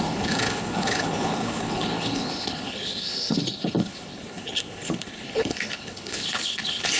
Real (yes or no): no